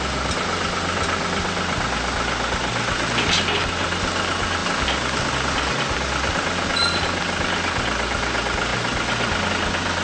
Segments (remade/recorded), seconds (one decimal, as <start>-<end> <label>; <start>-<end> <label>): 0.0-10.0 recorded